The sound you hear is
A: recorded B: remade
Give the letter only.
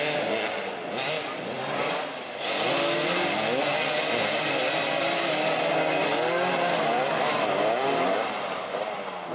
A